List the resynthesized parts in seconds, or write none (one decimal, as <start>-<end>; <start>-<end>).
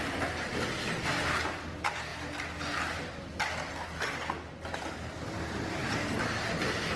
none